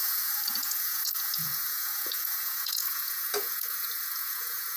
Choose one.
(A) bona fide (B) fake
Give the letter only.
B